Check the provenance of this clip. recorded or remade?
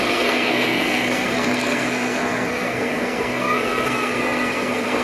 remade